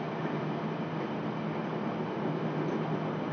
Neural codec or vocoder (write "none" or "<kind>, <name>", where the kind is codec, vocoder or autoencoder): none